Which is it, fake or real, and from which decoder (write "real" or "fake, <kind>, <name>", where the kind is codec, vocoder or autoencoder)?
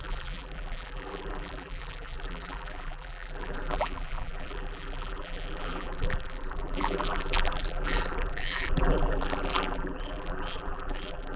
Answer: fake, vocoder, BigVGAN v2